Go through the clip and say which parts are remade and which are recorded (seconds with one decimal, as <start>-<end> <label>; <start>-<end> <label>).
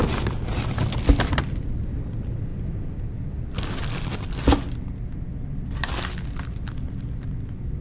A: 0.0-2.5 recorded; 2.5-4.8 remade; 4.8-7.8 recorded